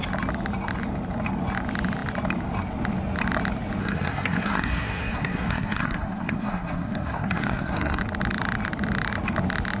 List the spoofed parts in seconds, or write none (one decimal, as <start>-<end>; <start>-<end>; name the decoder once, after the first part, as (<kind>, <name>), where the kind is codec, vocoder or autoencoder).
3.8-8.0 (codec, SNAC)